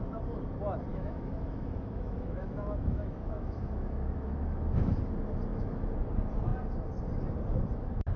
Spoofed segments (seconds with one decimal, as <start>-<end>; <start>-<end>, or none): 0.9-5.1; 5.5-6.1